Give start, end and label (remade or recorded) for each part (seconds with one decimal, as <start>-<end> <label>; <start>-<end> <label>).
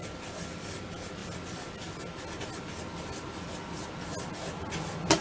0.0-5.2 recorded